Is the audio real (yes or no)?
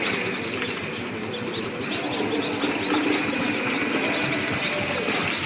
yes